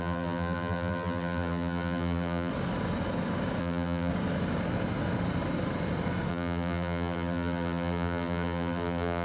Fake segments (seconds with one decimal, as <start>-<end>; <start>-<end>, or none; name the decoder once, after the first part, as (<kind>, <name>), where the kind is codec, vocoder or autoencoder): 0.0-2.5 (vocoder, BigVGAN v2); 3.6-4.1; 6.3-9.2